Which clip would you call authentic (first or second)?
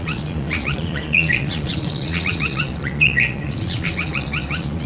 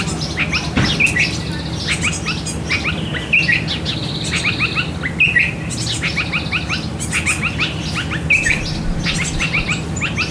second